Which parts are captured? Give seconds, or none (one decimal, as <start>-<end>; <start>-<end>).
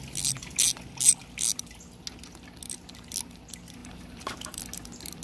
0.0-3.8; 4.6-5.2